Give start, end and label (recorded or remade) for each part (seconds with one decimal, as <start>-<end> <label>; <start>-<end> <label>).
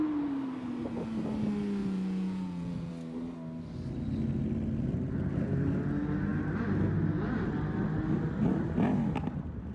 0.0-1.8 recorded; 1.8-2.9 remade; 2.9-9.7 recorded